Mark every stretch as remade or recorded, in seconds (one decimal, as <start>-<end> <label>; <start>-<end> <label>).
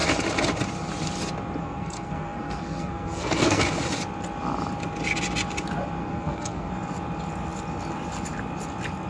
0.0-1.6 recorded; 1.6-3.6 remade; 3.6-6.0 recorded; 6.0-6.7 remade; 6.7-9.1 recorded